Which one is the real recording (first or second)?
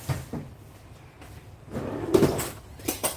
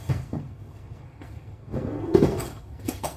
first